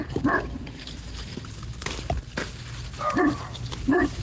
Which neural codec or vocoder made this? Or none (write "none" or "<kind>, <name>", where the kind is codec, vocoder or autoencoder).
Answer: none